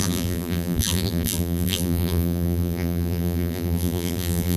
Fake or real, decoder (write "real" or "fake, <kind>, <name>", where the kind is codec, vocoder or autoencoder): fake, vocoder, BigVGAN v2